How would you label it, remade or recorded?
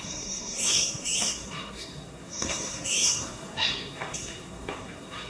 remade